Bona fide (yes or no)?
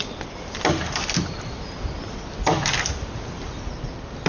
yes